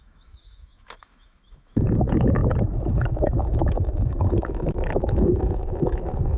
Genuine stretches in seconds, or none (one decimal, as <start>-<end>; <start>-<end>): none